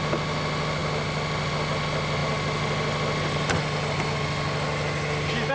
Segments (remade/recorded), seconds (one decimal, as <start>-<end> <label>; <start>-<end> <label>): 0.0-5.5 recorded